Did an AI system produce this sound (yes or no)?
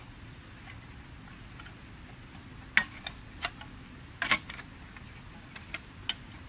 no